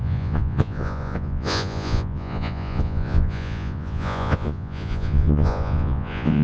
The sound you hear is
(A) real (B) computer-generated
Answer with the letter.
B